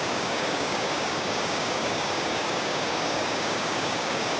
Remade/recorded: remade